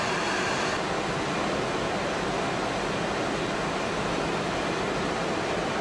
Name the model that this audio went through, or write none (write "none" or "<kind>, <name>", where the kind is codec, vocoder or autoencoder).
none